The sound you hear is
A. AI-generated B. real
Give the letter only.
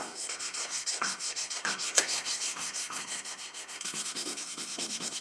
A